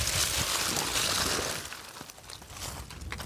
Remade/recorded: recorded